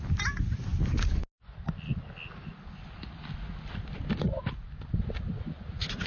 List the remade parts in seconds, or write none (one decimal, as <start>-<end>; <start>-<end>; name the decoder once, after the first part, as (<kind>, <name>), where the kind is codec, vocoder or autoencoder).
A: none